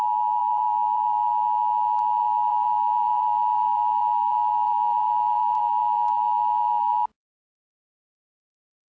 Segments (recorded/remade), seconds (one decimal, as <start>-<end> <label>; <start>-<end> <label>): 0.0-0.4 recorded; 0.4-1.3 remade; 1.3-2.2 recorded; 2.2-6.9 remade; 6.9-8.9 recorded